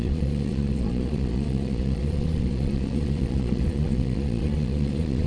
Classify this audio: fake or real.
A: fake